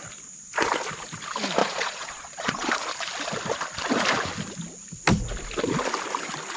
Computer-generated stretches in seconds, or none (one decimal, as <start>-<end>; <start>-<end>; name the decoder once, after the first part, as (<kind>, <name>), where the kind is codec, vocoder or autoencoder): 1.6-2.7 (vocoder, Vocos)